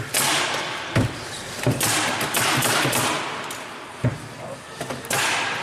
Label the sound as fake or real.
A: real